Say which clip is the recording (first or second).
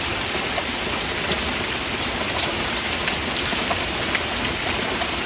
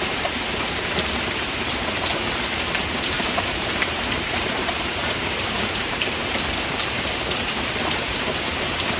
first